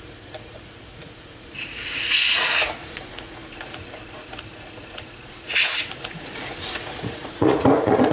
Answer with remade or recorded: remade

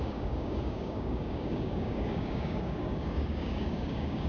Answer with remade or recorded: remade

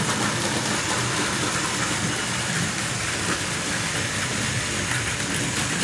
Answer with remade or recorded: recorded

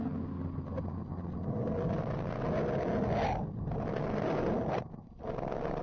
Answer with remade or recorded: recorded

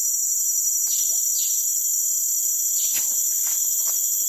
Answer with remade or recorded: recorded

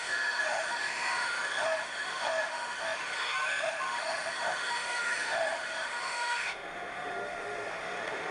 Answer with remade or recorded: remade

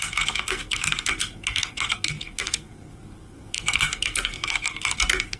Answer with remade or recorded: remade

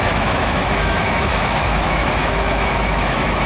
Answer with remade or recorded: remade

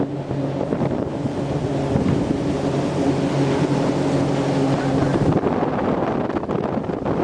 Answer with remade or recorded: recorded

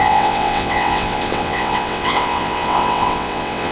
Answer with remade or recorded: remade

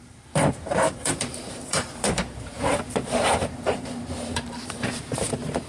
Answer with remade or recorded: remade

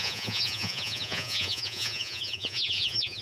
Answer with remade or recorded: remade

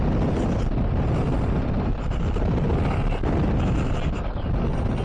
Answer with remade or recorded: recorded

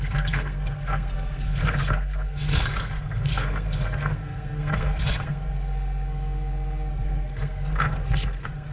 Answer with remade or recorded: remade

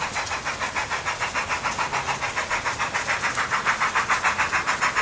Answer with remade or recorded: recorded